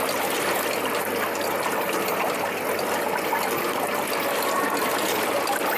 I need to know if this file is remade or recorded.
recorded